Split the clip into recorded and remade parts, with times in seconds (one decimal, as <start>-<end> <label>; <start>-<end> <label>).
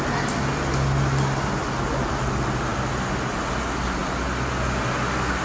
0.0-5.4 recorded